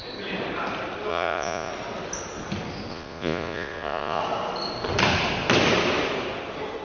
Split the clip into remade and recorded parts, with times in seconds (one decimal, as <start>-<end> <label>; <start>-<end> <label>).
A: 0.0-1.1 recorded; 1.1-1.7 remade; 1.7-2.9 recorded; 2.9-4.2 remade; 4.2-6.8 recorded